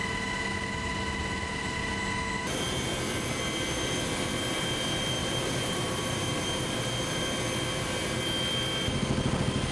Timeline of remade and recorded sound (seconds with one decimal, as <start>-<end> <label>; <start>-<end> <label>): 0.0-5.2 recorded; 5.2-6.4 remade; 6.4-9.7 recorded